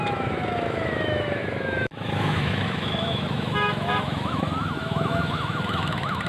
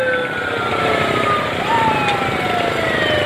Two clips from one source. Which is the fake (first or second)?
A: first